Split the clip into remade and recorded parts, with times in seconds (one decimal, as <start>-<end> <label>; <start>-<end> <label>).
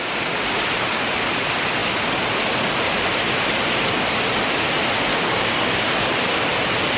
0.0-5.1 recorded; 5.1-5.7 remade; 5.7-7.0 recorded